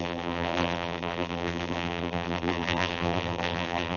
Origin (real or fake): fake